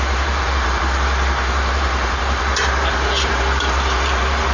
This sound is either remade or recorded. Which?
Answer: remade